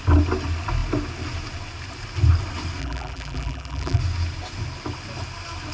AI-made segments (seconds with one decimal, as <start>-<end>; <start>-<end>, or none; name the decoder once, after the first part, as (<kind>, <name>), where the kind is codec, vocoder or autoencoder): 2.8-4.0 (vocoder, BigVGAN v2)